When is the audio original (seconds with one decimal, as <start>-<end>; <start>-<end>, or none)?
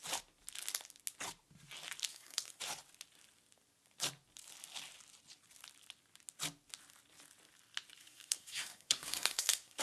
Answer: 0.0-2.1; 2.6-8.0